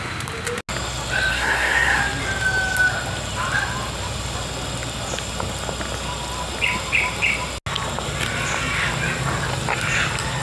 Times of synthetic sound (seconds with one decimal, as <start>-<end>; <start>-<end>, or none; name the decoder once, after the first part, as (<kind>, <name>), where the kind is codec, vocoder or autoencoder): 1.3-2.0 (codec, SNAC)